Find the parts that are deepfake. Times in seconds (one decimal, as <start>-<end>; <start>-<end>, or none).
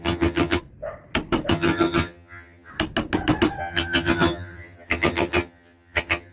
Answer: 0.0-0.6; 1.5-2.7; 3.6-6.3